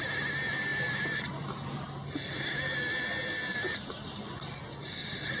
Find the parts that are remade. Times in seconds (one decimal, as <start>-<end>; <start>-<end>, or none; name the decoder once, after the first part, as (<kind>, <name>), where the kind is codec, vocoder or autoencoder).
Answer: none